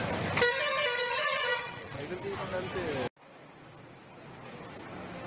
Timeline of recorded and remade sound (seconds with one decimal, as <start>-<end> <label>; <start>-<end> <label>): 0.0-1.0 recorded; 1.0-2.0 remade; 2.0-5.3 recorded